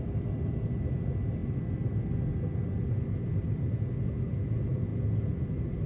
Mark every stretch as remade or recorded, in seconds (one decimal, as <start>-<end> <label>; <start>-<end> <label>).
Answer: 0.0-5.9 recorded